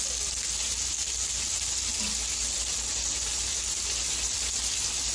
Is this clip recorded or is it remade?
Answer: recorded